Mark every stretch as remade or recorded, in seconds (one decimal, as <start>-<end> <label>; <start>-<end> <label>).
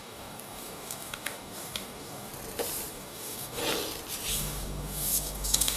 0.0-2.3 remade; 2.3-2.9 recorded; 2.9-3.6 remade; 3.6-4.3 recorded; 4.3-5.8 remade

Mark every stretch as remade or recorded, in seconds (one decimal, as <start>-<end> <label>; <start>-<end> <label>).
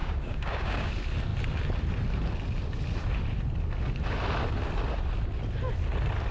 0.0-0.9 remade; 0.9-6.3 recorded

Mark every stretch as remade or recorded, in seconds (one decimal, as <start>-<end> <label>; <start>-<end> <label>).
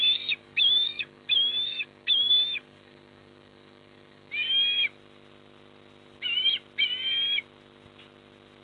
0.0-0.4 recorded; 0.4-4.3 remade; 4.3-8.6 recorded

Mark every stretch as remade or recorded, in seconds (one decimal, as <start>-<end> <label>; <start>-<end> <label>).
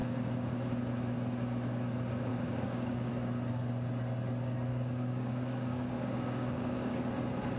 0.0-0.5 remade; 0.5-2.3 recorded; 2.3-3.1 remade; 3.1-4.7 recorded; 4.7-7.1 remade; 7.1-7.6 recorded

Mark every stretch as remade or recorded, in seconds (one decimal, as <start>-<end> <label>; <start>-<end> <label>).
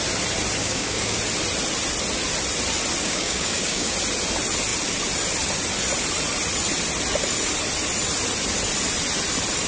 0.0-0.6 recorded; 0.6-1.2 remade; 1.2-3.0 recorded; 3.0-3.9 remade; 3.9-9.7 recorded